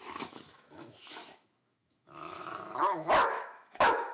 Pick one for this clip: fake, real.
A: fake